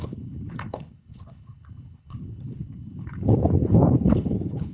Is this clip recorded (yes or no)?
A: no